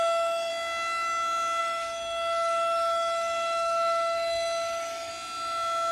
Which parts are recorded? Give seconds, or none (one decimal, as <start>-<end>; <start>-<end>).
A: 0.5-1.6; 5.1-5.9